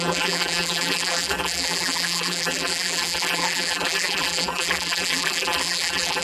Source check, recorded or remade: remade